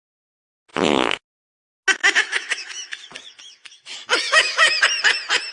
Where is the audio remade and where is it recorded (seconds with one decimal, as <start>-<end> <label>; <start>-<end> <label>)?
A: 0.0-0.7 recorded; 0.7-1.2 remade; 1.2-2.0 recorded; 2.0-4.8 remade; 4.8-5.5 recorded

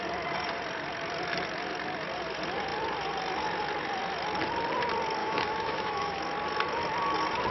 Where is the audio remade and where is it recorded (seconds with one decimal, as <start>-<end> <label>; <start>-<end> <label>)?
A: 0.0-5.2 recorded; 5.2-6.2 remade; 6.2-7.5 recorded

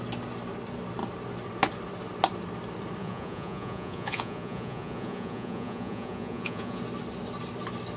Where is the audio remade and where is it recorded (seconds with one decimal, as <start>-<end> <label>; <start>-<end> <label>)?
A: 0.0-3.0 recorded; 3.0-6.8 remade; 6.8-8.0 recorded

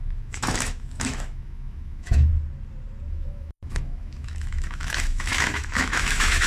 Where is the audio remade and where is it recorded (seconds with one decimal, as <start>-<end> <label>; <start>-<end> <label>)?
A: 0.0-2.3 remade; 2.3-3.1 recorded; 3.1-6.5 remade

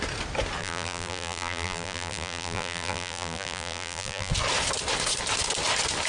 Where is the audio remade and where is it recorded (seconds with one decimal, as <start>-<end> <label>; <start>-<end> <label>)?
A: 0.0-0.6 recorded; 0.6-4.3 remade; 4.3-6.1 recorded

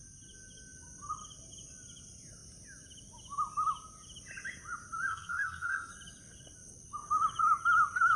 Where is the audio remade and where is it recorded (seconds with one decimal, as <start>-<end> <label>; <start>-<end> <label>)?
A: 0.0-5.1 recorded; 5.1-5.9 remade; 5.9-8.2 recorded